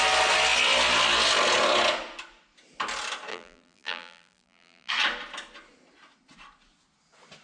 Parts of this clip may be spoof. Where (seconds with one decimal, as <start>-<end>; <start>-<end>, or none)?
3.3-4.9